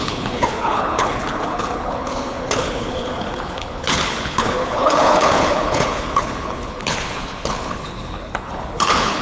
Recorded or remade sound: remade